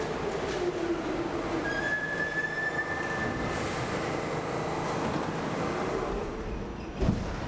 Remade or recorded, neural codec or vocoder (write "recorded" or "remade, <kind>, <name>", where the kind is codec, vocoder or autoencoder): recorded